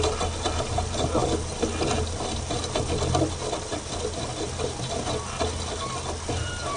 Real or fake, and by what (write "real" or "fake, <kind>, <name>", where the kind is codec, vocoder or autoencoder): real